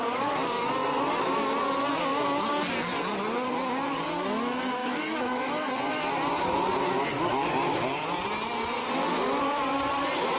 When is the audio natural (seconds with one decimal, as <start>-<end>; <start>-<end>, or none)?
0.0-4.8; 5.7-10.4